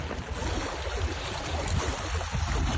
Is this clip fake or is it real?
real